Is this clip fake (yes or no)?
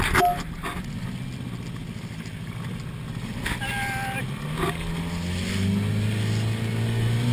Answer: no